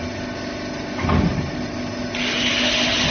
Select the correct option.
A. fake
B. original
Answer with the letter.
B